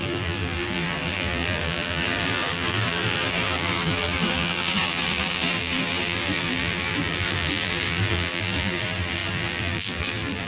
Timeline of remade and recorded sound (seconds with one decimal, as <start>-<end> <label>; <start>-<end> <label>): 0.0-10.5 remade